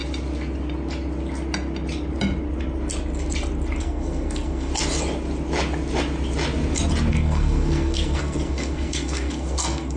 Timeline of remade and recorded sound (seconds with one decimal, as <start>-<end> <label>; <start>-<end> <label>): 0.0-3.8 recorded; 3.8-4.7 remade; 4.7-7.1 recorded; 7.1-10.0 remade